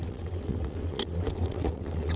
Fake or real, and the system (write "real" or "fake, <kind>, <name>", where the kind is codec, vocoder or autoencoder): fake, vocoder, WaveNeXt